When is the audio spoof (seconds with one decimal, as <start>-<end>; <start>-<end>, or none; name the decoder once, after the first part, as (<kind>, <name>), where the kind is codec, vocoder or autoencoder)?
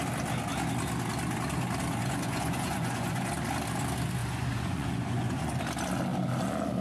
2.0-3.3 (vocoder, Vocos); 4.2-5.6